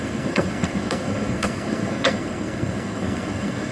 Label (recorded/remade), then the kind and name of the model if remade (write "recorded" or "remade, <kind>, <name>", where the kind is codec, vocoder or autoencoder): remade, codec, SNAC